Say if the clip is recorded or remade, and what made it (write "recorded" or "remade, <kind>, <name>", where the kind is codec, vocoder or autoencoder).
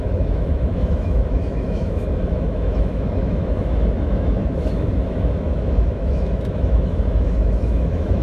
remade, autoencoder, DAC-VAE